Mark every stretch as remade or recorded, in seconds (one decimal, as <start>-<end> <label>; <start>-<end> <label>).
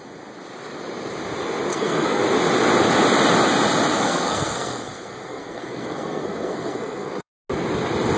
0.0-1.7 recorded; 1.7-2.2 remade; 2.2-3.9 recorded; 3.9-7.3 remade; 7.3-8.2 recorded